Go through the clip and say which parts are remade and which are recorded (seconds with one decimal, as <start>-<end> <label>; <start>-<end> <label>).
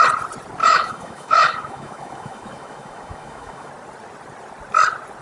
0.0-0.6 recorded; 0.6-3.7 remade; 3.7-5.2 recorded